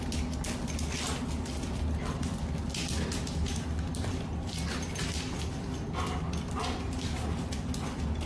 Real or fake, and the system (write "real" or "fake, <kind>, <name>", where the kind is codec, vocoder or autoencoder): real